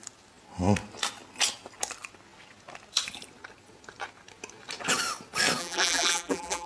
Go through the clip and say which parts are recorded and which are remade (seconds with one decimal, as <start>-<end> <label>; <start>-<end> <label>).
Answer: 0.0-5.6 recorded; 5.6-6.7 remade

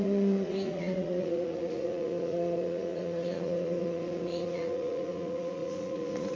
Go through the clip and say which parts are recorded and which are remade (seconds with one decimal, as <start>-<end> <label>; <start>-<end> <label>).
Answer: 0.0-6.4 remade

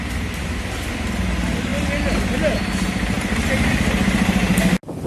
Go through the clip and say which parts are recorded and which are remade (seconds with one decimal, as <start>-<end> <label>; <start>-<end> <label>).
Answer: 0.0-5.1 recorded

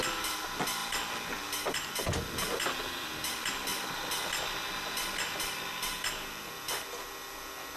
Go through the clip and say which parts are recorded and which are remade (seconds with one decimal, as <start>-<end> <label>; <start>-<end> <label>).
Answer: 0.0-7.8 recorded

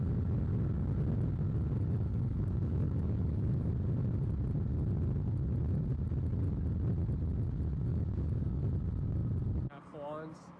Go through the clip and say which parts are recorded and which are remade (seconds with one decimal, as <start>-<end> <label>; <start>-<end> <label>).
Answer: 0.0-2.1 recorded; 2.1-3.7 remade; 3.7-7.9 recorded; 7.9-8.6 remade; 8.6-10.6 recorded

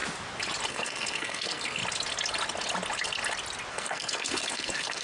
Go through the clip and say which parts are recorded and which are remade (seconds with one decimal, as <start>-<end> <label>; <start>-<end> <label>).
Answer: 0.0-0.7 recorded; 0.7-1.8 remade; 1.8-3.7 recorded; 3.7-5.0 remade

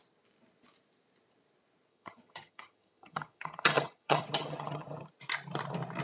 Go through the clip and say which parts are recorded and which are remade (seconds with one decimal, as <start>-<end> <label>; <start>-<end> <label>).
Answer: 0.0-1.9 recorded; 1.9-5.1 remade; 5.1-6.0 recorded

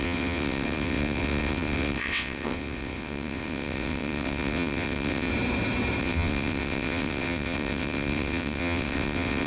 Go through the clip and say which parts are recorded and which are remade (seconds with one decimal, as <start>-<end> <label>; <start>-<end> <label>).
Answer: 0.0-5.3 remade; 5.3-6.0 recorded; 6.0-9.5 remade